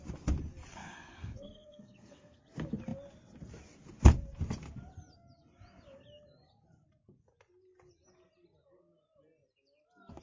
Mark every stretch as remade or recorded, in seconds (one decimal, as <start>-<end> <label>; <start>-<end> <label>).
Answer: 0.0-0.8 recorded; 0.8-2.4 remade; 2.4-10.2 recorded